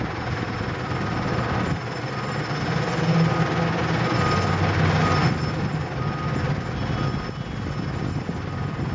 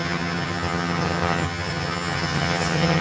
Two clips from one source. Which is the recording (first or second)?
first